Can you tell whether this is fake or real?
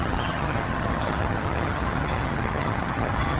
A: fake